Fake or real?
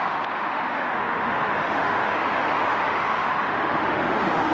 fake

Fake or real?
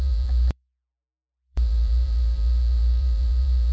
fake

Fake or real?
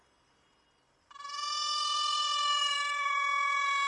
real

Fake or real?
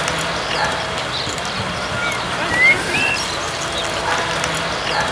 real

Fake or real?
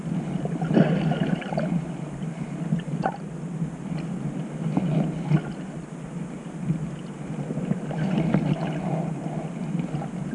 real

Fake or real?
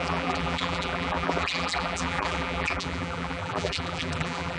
fake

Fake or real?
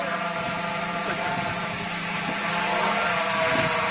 fake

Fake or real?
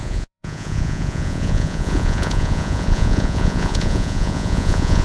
fake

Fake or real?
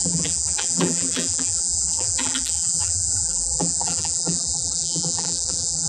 fake